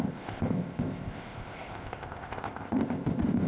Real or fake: fake